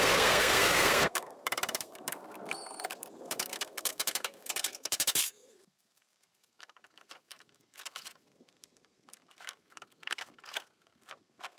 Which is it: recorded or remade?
remade